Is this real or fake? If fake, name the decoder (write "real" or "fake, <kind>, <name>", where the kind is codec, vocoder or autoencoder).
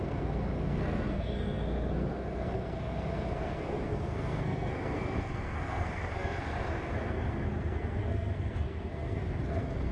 fake, codec, SNAC